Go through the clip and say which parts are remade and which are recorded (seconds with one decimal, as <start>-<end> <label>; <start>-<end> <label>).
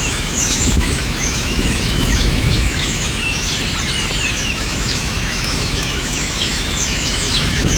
0.0-3.5 remade; 3.5-4.3 recorded; 4.3-7.8 remade